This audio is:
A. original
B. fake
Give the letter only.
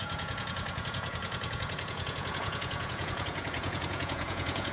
B